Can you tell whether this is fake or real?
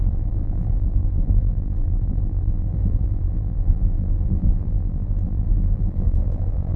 fake